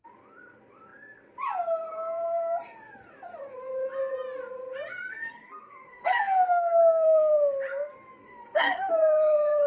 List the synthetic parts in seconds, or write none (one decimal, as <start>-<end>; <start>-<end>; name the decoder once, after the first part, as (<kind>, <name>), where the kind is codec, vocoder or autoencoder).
5.1-6.8 (codec, SNAC); 8.2-8.9